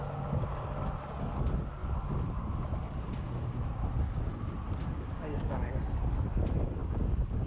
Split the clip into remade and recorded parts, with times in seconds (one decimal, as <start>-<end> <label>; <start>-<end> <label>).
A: 0.0-4.8 recorded; 4.8-5.7 remade; 5.7-6.8 recorded; 6.8-7.5 remade